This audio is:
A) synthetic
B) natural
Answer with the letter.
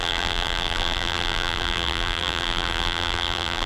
A